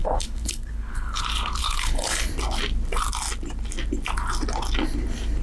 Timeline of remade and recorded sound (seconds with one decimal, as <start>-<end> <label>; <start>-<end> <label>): 0.0-1.2 remade; 1.2-1.6 recorded; 1.6-2.3 remade; 2.3-5.4 recorded